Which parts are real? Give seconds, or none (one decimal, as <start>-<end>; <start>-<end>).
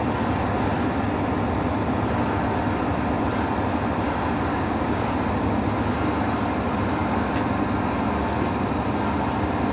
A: 0.0-4.5; 5.2-9.7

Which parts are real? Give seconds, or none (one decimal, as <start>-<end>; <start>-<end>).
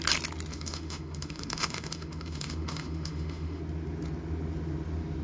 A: 0.0-0.5; 3.6-5.2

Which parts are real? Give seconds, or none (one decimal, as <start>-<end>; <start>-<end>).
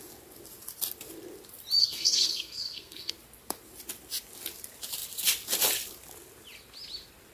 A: 0.0-1.8; 3.1-7.3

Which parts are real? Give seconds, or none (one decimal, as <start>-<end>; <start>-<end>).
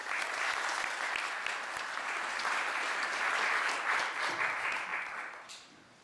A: 0.0-6.0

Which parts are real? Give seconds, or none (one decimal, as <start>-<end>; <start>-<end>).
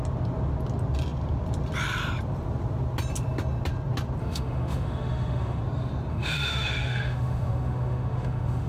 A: 0.0-4.2; 5.6-6.1